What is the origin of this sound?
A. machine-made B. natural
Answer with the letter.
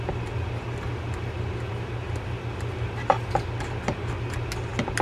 B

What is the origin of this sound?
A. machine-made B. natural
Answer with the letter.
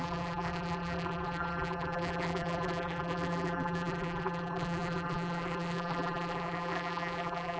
A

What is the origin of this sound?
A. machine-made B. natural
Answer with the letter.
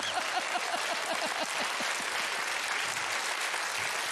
B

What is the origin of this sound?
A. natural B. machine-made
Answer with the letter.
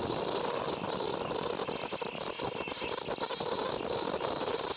A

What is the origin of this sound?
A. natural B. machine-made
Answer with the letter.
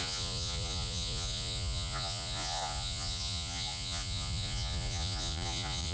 B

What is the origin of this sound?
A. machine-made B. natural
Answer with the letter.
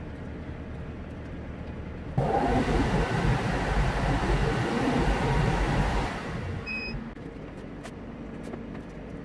A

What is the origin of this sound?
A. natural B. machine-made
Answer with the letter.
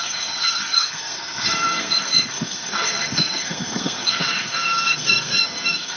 B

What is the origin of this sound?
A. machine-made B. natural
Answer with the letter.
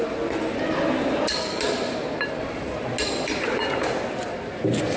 B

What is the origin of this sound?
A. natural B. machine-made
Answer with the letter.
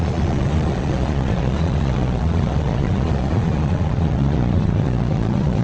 B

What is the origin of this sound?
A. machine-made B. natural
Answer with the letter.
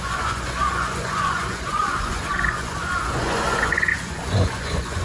A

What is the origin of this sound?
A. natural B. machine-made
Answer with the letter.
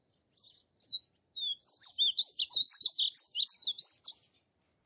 A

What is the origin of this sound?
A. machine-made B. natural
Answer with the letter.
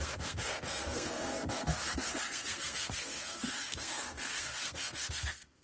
A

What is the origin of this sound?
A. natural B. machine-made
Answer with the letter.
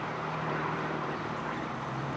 B